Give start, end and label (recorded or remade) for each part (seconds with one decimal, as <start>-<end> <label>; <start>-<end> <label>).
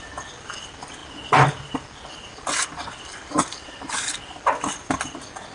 0.0-3.1 recorded; 3.1-4.2 remade; 4.2-5.5 recorded